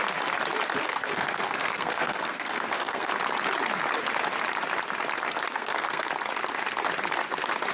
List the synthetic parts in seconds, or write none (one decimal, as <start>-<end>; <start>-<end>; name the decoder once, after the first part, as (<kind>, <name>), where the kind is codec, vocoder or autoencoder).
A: 0.8-3.1 (codec, SNAC); 5.5-6.1